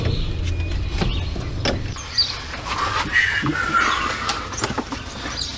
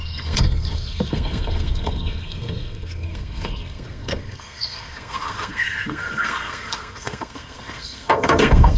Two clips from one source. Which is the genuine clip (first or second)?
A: first